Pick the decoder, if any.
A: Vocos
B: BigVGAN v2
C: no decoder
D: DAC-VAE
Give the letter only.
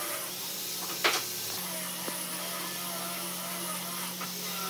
C